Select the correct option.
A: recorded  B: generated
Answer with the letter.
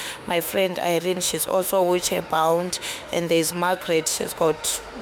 B